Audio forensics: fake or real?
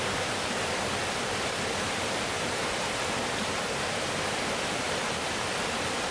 real